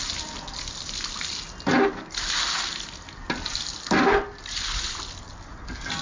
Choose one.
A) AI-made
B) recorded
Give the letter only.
B